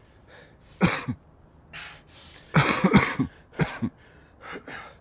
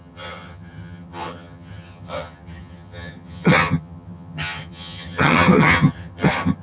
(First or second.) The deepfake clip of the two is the second